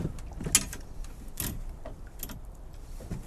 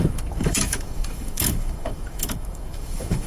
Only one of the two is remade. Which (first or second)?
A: second